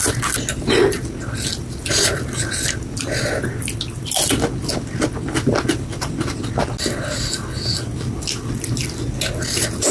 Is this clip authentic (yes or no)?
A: yes